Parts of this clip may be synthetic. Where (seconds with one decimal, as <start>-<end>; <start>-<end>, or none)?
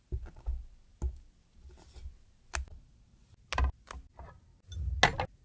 none